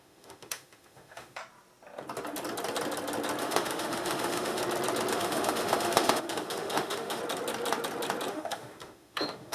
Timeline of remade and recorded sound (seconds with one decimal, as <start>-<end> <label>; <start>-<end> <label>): 0.0-1.4 remade; 1.4-3.4 recorded; 3.4-4.6 remade; 4.6-5.1 recorded; 5.1-7.2 remade; 7.2-8.3 recorded; 8.3-9.5 remade